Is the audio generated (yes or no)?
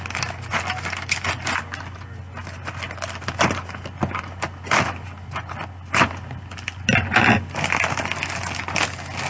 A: no